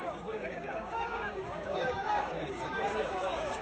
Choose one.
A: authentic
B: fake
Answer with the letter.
B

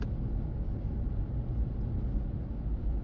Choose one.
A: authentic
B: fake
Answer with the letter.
A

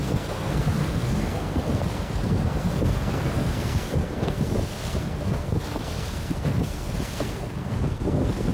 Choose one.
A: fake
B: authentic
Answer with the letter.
A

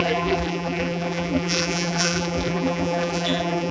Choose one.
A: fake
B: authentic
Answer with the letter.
A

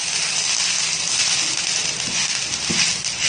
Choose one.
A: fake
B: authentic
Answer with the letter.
B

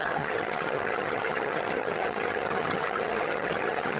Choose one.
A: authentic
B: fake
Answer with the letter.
B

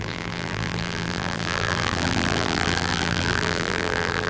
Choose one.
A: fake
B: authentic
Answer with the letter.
A